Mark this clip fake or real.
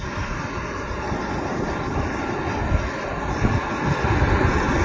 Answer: real